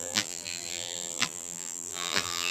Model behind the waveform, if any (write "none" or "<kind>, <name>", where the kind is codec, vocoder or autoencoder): vocoder, BigVGAN v2